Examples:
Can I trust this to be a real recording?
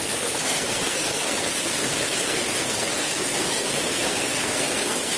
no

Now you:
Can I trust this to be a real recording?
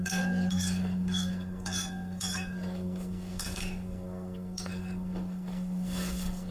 no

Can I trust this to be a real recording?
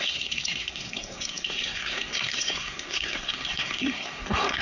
no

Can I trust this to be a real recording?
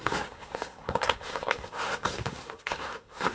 no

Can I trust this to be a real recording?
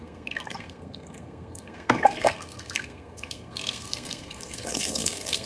no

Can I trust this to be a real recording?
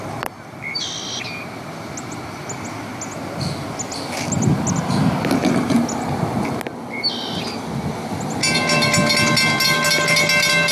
yes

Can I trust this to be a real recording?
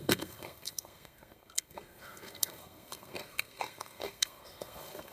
no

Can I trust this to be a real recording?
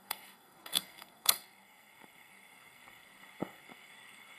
no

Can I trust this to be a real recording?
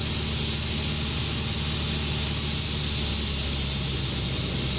yes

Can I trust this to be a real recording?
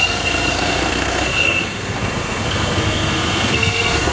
no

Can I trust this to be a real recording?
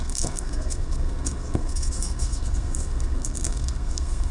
no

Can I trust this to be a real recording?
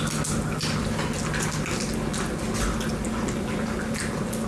yes